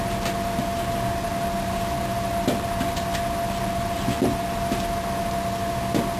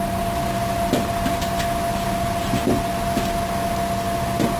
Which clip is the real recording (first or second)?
second